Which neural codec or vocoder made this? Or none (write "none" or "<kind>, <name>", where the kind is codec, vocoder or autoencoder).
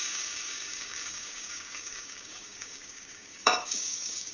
codec, DAC